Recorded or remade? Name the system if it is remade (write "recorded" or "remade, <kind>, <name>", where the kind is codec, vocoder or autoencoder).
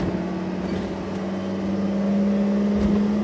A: recorded